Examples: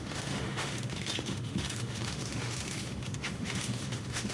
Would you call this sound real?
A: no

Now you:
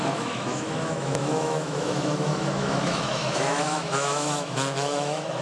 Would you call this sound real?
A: no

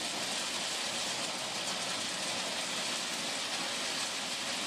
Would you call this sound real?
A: yes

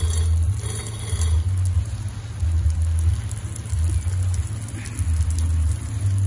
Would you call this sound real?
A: yes